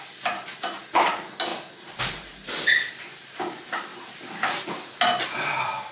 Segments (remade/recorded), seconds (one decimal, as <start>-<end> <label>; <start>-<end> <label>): 0.0-1.5 recorded; 1.5-2.9 remade; 2.9-5.9 recorded